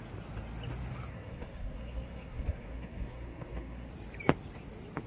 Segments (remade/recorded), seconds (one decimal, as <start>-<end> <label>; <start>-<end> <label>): 0.0-1.1 recorded; 1.1-3.9 remade; 3.9-5.1 recorded